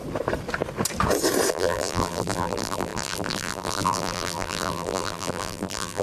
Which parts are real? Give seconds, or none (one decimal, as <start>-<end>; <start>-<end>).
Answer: 0.0-1.5